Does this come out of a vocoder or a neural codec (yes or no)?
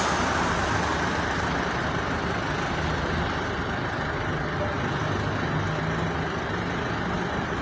no